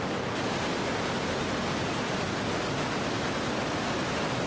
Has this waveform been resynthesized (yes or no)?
no